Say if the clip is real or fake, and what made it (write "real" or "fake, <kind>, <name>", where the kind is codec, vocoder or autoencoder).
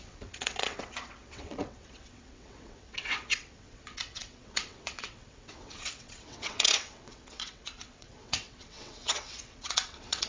fake, vocoder, WaveNeXt